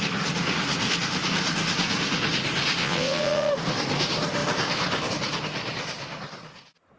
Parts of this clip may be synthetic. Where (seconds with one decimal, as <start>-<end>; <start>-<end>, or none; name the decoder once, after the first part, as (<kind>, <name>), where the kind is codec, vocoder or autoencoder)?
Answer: 2.8-3.5 (vocoder, WaveNeXt)